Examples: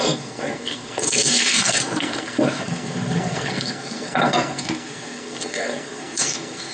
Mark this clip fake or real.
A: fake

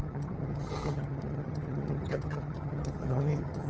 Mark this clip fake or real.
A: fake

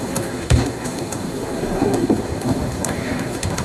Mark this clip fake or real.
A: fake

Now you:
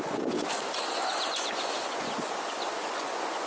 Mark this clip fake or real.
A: fake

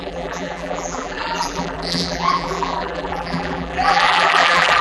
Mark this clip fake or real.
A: fake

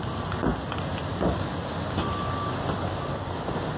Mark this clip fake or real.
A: real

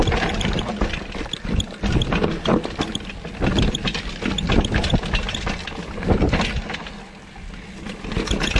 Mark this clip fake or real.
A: real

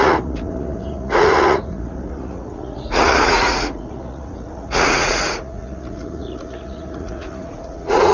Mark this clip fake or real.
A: fake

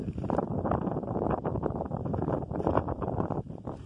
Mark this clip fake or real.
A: fake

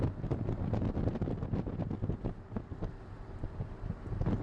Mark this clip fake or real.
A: real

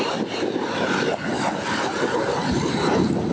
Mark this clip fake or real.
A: real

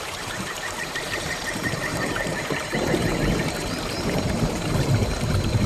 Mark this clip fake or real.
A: fake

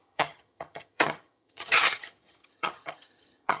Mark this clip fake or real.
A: fake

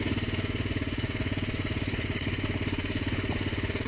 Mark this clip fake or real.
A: fake